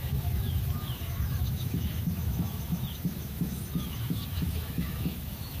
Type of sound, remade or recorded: remade